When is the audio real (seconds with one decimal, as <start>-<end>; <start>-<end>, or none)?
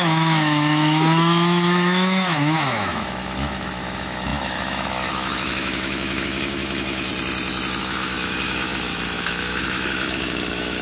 7.1-7.8